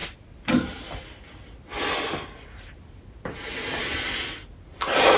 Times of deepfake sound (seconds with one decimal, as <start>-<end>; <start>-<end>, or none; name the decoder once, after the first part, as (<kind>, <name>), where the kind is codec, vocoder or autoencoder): none